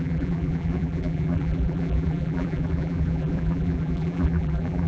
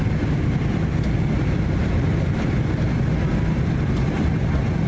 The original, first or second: second